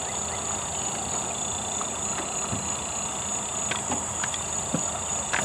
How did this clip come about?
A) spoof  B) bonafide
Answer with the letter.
B